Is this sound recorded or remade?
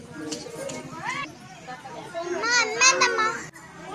recorded